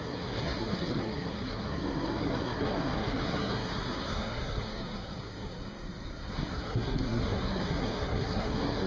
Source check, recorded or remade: remade